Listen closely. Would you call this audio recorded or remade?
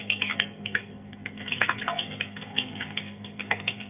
remade